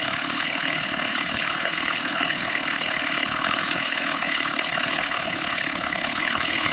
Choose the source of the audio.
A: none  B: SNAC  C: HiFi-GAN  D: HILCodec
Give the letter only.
D